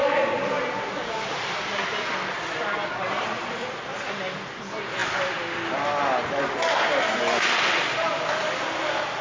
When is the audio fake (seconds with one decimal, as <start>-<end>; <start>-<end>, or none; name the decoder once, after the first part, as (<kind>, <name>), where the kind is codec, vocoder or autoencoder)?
none